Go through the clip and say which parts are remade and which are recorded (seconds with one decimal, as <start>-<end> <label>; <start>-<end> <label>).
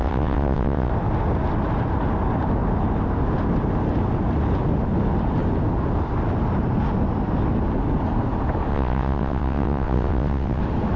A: 0.0-0.9 remade; 0.9-8.7 recorded; 8.7-10.6 remade; 10.6-11.0 recorded